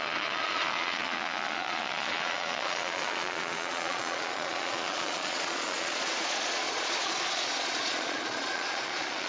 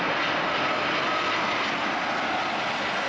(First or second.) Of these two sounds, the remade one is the first